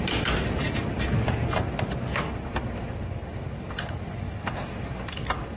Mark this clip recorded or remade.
remade